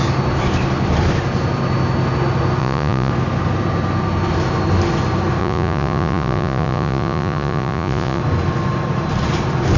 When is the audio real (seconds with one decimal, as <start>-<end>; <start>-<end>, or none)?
0.0-2.6; 3.1-5.4; 8.2-9.8